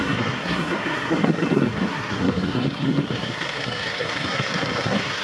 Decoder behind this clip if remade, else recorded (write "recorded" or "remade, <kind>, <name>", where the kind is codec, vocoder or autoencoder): remade, codec, SNAC